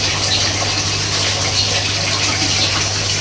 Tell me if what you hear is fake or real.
real